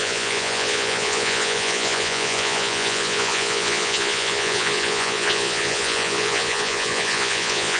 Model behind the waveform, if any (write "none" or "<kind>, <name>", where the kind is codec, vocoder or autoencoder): vocoder, Vocos